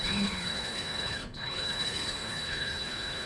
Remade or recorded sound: remade